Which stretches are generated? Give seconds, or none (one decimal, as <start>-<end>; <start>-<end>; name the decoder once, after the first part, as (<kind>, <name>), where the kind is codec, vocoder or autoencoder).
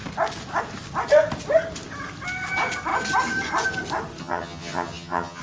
4.2-5.4 (vocoder, HiFi-GAN)